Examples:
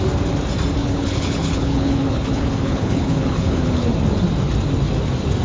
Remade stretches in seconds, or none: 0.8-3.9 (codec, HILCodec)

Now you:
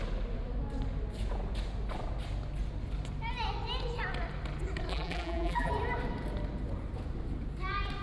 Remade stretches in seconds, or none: 4.9-5.7 (vocoder, BigVGAN v2)

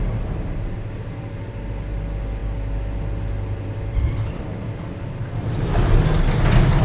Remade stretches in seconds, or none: none

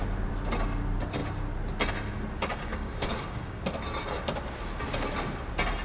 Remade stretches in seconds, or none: 2.5-3.6 (codec, DAC)